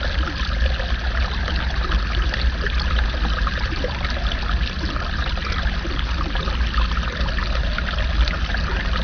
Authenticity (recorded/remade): recorded